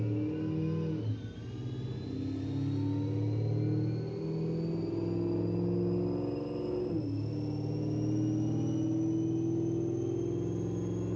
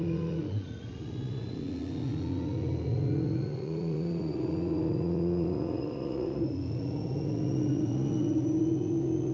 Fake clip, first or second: second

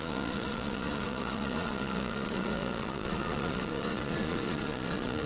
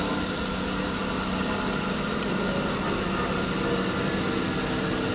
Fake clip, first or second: first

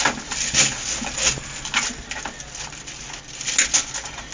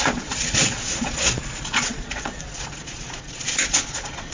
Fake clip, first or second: second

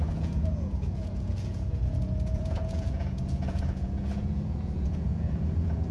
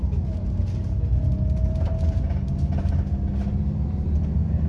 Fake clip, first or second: first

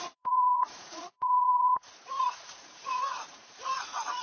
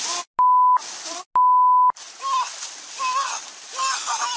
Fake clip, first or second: first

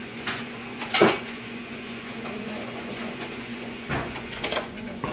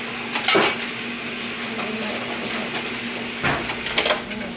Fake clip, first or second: first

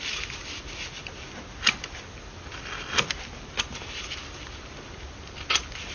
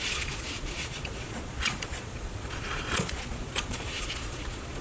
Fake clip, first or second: second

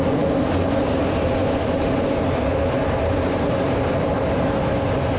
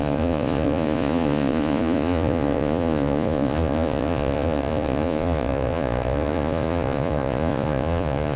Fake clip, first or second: second